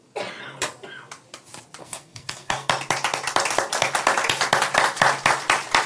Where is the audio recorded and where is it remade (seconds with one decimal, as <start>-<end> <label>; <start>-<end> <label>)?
0.0-1.8 recorded; 1.8-2.7 remade; 2.7-5.9 recorded